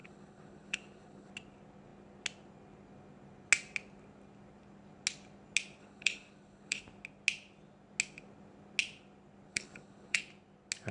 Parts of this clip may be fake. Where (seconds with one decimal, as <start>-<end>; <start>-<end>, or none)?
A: 0.0-1.3; 5.8-6.8; 9.5-10.2